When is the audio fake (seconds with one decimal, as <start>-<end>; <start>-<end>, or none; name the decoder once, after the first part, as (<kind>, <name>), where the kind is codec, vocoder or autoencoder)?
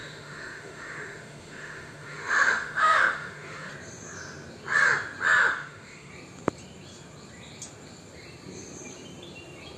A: 0.0-3.7 (autoencoder, DAC-VAE); 5.5-6.1